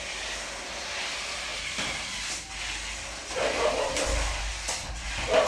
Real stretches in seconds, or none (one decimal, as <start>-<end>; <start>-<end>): 0.0-5.5